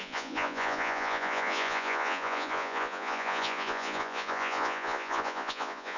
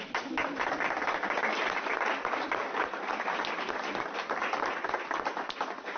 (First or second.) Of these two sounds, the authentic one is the second